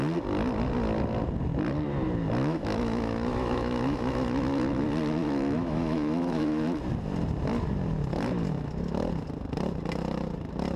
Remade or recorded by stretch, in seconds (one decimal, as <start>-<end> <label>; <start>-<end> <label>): 0.0-2.4 recorded; 2.4-4.8 remade; 4.8-5.2 recorded; 5.2-6.8 remade; 6.8-10.8 recorded